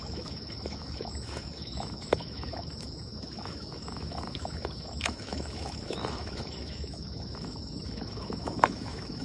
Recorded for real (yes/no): no